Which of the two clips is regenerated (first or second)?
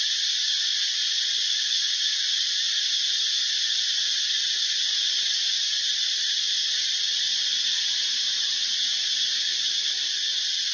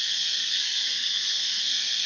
second